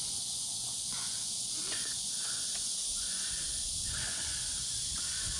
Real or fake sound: fake